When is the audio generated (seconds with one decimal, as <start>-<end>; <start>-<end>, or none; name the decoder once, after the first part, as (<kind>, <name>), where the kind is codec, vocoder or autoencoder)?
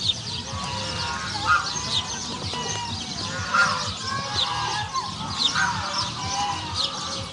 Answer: none